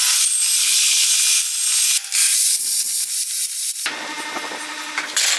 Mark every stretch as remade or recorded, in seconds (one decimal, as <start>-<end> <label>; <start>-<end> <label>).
0.0-0.6 recorded; 0.6-1.1 remade; 1.1-2.5 recorded; 2.5-3.1 remade; 3.1-5.4 recorded